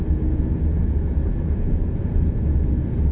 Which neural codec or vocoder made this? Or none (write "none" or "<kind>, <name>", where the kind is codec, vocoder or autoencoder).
vocoder, Vocos